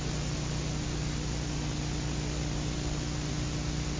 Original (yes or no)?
yes